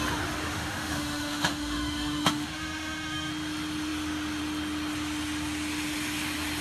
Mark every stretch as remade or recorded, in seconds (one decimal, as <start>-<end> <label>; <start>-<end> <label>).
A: 0.0-0.4 recorded; 0.4-3.3 remade; 3.3-6.6 recorded